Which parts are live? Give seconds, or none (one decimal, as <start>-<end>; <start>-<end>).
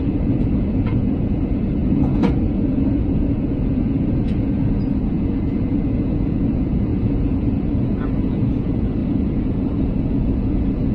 none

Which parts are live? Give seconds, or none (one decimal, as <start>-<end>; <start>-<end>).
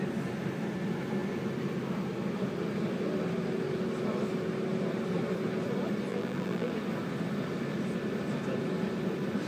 0.0-6.1; 6.7-9.5